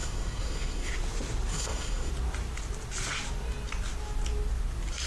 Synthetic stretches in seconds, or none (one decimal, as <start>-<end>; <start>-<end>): 0.0-0.9; 1.5-2.1